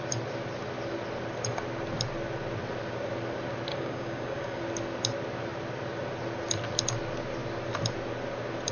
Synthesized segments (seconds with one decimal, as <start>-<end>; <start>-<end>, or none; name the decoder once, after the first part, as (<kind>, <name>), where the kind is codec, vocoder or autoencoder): 3.7-4.6 (codec, DAC)